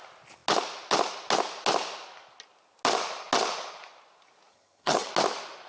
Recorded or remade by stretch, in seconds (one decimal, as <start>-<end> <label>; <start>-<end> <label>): 0.0-4.5 recorded; 4.5-5.1 remade; 5.1-5.7 recorded